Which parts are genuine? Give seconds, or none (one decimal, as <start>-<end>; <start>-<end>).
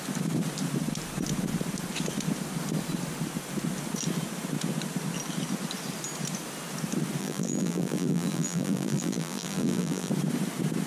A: 0.0-7.2; 10.1-10.9